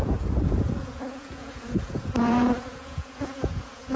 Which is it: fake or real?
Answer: fake